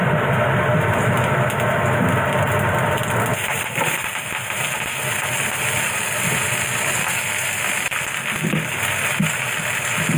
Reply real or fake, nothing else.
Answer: real